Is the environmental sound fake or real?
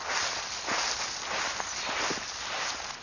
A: real